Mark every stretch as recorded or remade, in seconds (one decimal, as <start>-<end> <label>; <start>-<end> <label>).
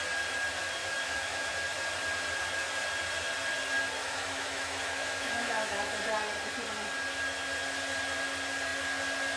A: 0.0-0.8 recorded; 0.8-1.5 remade; 1.5-4.0 recorded; 4.0-5.9 remade; 5.9-9.4 recorded